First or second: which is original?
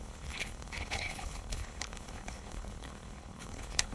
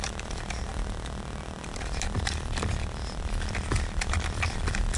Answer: second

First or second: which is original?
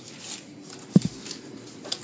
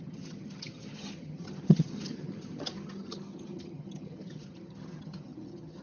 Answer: first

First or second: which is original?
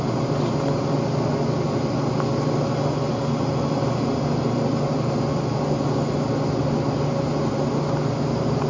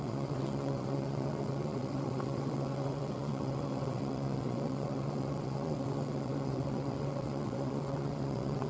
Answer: first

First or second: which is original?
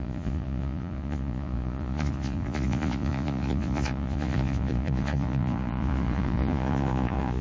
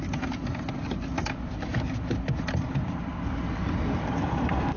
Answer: second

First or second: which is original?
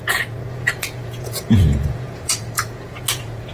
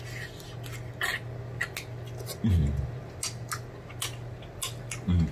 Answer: second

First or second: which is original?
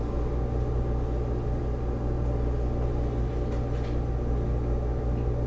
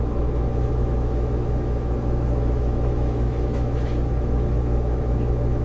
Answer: first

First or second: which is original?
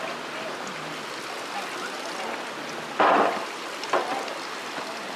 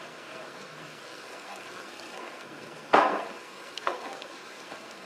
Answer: first